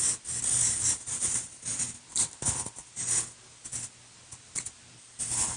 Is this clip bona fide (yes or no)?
yes